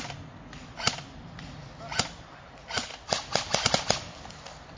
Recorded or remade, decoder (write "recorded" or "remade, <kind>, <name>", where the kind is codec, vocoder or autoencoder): recorded